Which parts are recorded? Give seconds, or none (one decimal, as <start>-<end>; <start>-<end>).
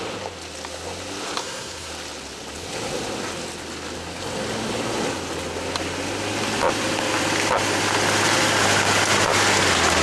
0.0-1.4; 1.9-10.0